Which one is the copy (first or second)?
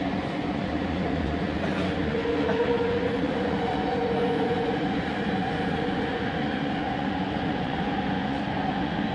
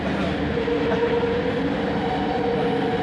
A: first